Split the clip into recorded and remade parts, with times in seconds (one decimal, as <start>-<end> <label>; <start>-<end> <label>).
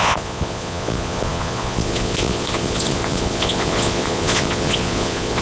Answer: 0.0-5.4 remade